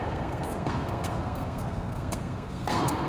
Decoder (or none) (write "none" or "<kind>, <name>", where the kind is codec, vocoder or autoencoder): codec, SNAC